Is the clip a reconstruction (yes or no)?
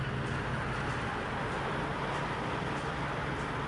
no